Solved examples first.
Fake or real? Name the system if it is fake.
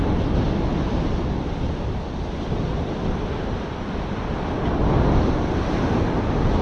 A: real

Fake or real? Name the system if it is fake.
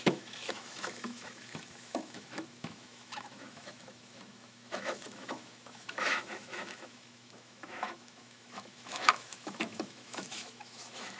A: fake, autoencoder, DAC-VAE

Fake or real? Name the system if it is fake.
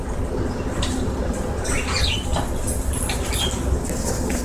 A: real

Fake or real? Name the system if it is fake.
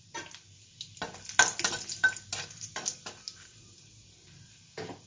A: real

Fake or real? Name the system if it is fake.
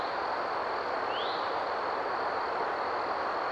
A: real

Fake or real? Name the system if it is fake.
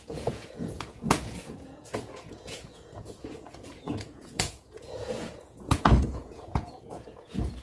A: fake, vocoder, Vocos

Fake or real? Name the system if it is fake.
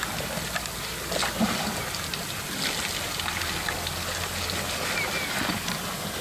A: real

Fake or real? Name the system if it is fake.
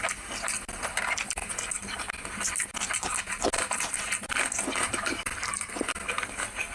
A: real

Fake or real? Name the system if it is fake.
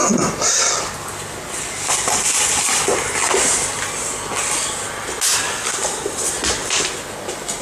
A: real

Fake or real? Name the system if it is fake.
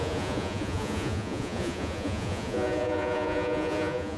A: fake, vocoder, Vocos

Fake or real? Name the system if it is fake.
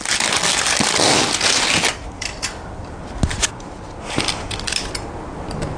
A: real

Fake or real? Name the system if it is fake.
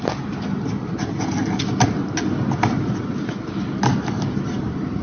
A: real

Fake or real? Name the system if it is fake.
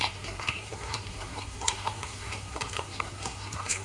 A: fake, codec, SNAC